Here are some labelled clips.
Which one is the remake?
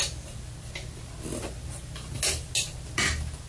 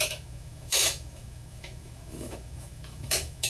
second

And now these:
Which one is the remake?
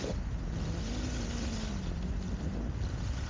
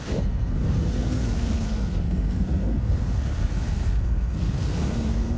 second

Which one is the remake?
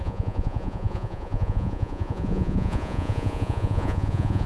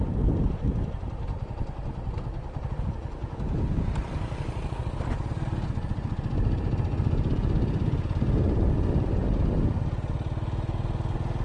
first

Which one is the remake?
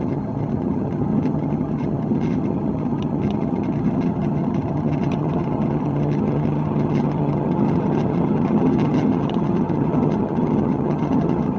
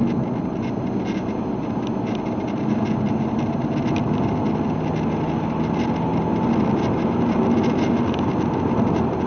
first